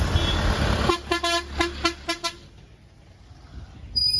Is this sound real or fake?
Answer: real